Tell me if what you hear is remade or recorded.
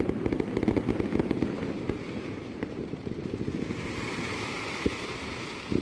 remade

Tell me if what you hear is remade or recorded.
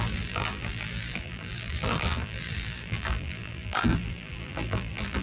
remade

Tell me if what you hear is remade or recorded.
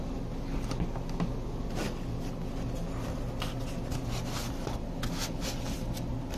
recorded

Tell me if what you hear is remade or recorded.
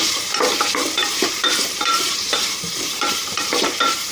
remade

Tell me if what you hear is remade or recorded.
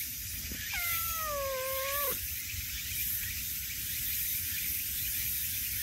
recorded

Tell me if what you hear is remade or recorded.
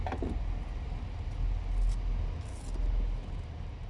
recorded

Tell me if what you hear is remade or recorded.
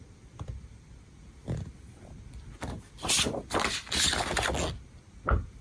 recorded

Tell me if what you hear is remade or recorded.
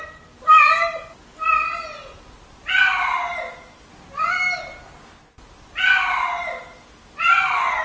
recorded